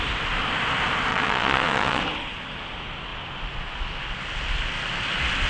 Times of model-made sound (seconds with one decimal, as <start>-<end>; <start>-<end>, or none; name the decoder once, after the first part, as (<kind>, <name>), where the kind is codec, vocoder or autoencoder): 1.1-2.0 (vocoder, Vocos)